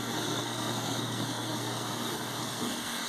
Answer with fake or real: fake